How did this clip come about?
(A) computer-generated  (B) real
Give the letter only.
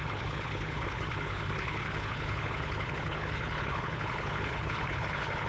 A